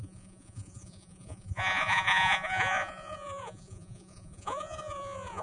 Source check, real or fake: fake